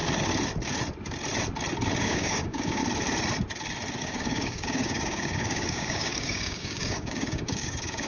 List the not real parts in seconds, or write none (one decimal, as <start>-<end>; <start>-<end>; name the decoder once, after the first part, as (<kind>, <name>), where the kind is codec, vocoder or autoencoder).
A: 2.0-2.8 (codec, DAC); 4.0-8.1